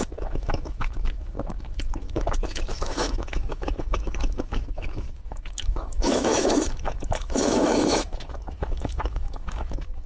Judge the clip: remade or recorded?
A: remade